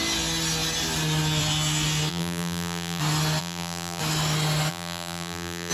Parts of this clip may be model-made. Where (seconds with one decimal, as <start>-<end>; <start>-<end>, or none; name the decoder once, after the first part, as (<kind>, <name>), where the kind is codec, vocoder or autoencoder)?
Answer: 2.1-3.0 (vocoder, BigVGAN v2); 3.4-4.0; 4.7-5.7